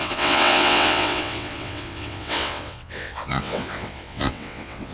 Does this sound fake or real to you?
fake